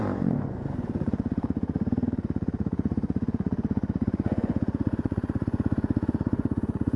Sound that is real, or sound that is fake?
fake